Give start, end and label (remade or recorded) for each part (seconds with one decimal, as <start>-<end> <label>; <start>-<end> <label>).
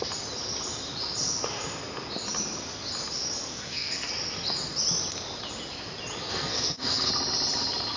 0.0-3.5 recorded; 3.5-4.1 remade; 4.1-6.3 recorded; 6.3-7.1 remade; 7.1-8.0 recorded